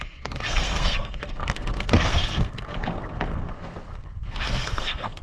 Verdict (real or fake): fake